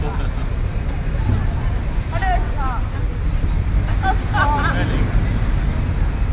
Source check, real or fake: real